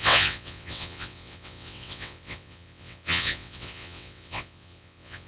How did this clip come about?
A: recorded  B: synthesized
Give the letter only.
B